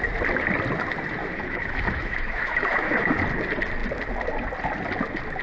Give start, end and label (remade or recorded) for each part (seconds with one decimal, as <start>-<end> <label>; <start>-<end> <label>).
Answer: 0.0-1.2 recorded; 1.2-3.2 remade; 3.2-5.4 recorded

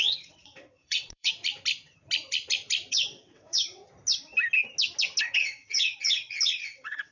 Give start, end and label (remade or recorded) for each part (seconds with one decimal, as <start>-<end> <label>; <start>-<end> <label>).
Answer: 0.0-1.4 remade; 1.4-2.9 recorded; 2.9-3.8 remade; 3.8-5.2 recorded; 5.2-7.1 remade

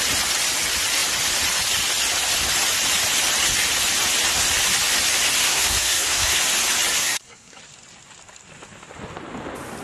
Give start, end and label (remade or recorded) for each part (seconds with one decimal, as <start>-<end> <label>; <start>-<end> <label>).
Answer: 0.0-5.4 recorded; 5.4-6.4 remade; 6.4-7.0 recorded; 7.0-7.6 remade; 7.6-9.8 recorded

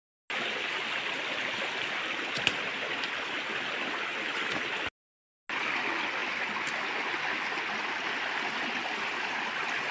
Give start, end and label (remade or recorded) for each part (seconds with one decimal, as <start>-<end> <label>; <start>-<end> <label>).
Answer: 0.0-9.9 recorded